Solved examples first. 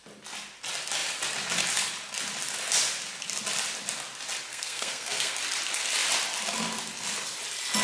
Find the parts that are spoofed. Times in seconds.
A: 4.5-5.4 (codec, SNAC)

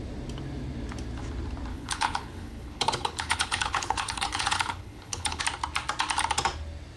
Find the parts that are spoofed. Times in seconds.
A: 1.7-5.4 (codec, HILCodec)

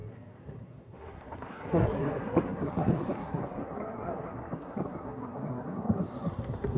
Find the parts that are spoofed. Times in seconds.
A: 0.0-6.8 (codec, SNAC)

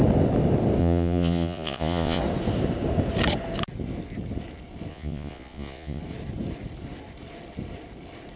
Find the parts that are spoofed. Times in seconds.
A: 0.8-2.2 (vocoder, Vocos); 4.9-6.0

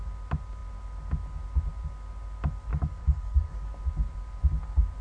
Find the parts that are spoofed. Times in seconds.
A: 2.7-3.7 (codec, DAC)

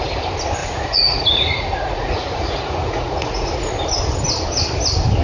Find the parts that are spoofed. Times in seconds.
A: 0.6-3.7 (vocoder, Vocos)

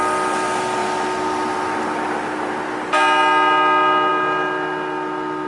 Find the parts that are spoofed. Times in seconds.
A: none

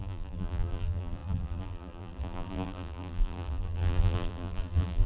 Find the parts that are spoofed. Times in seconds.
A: 0.0-5.1 (vocoder, BigVGAN v2)